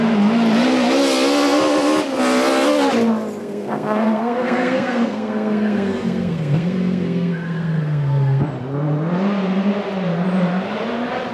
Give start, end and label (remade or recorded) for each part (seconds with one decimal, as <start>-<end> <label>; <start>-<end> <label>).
0.0-3.4 recorded; 3.4-8.4 remade; 8.4-11.3 recorded